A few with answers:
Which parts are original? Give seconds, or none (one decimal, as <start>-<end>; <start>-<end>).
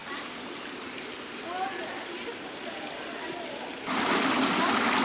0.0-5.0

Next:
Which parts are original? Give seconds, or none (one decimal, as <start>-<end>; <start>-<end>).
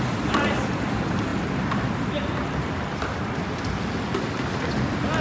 0.0-5.2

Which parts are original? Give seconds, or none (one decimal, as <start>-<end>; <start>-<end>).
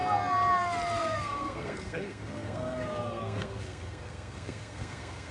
0.0-1.0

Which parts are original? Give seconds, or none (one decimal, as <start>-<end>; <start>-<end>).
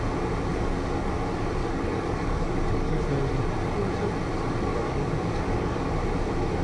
0.0-0.5; 1.1-1.6; 3.0-4.7; 5.8-6.6